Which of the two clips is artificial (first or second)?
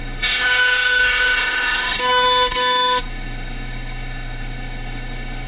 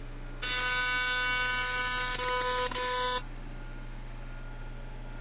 first